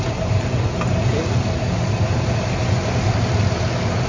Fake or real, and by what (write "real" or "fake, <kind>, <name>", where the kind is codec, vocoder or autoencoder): real